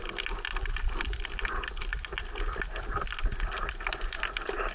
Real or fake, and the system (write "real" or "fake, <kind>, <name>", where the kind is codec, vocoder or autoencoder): real